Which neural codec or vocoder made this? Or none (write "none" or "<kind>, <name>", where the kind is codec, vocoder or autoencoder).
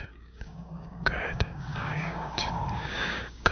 codec, DAC